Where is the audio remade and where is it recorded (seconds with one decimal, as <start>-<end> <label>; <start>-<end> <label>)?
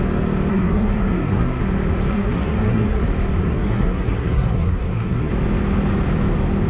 0.0-0.5 recorded; 0.5-1.6 remade; 1.6-2.1 recorded; 2.1-3.0 remade; 3.0-3.4 recorded; 3.4-5.3 remade; 5.3-6.7 recorded